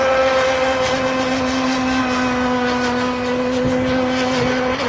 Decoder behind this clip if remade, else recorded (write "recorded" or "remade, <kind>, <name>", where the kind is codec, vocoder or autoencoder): recorded